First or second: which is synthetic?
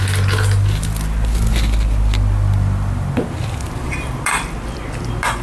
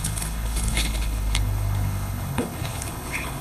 second